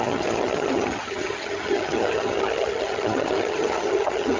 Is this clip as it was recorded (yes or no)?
no